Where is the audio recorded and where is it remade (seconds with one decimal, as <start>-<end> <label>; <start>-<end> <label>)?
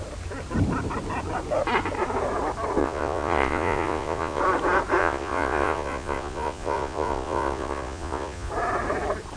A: 0.0-2.8 recorded; 2.8-4.4 remade; 4.4-5.0 recorded; 5.0-8.5 remade; 8.5-9.4 recorded